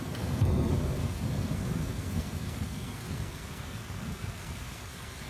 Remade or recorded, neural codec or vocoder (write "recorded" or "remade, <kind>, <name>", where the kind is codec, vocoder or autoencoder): remade, codec, SNAC